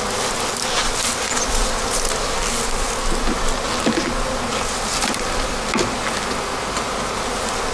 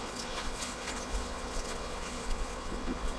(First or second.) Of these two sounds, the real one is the first